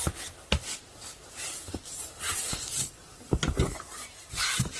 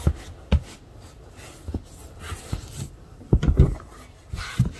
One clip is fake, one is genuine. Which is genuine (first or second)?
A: second